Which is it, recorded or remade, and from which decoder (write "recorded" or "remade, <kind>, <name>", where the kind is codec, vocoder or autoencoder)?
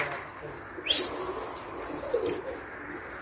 recorded